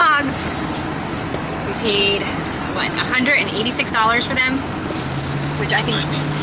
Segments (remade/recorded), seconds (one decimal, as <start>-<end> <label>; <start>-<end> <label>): 0.0-6.4 recorded